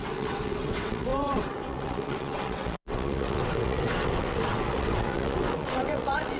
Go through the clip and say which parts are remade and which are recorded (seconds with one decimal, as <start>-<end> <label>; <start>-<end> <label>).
0.0-6.4 remade